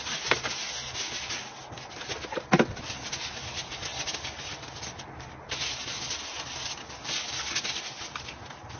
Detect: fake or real real